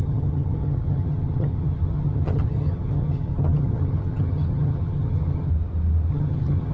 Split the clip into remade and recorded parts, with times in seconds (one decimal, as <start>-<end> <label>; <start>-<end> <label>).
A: 0.0-5.5 remade; 5.5-6.1 recorded; 6.1-6.7 remade